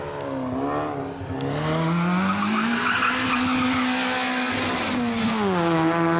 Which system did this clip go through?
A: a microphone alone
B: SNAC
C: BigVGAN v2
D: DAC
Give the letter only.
A